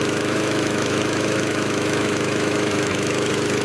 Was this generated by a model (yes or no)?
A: yes